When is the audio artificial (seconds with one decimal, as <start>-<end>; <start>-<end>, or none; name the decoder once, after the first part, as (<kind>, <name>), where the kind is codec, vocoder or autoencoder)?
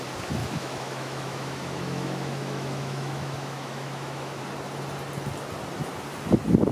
0.4-4.4 (autoencoder, DAC-VAE)